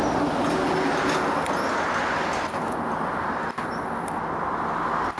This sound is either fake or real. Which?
real